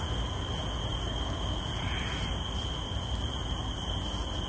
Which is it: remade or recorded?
recorded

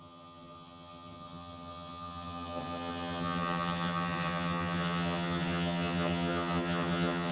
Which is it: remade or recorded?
remade